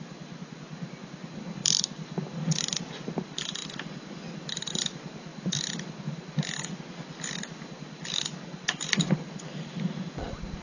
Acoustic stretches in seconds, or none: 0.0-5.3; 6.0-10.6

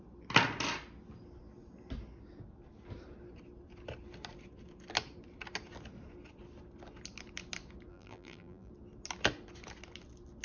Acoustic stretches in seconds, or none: 0.0-7.9; 8.7-10.4

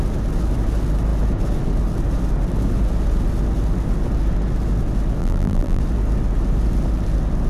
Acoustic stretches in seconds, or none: 0.0-5.2; 5.8-7.5

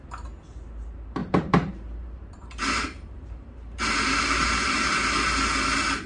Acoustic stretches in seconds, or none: 0.0-1.2; 4.9-6.1

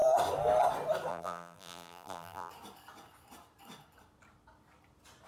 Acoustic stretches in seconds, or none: 0.0-1.1; 2.5-5.3

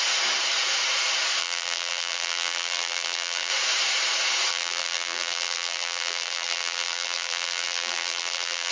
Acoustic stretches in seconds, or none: 0.0-1.4; 3.5-4.5